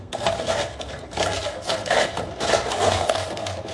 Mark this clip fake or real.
fake